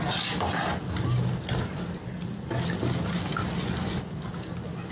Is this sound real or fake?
real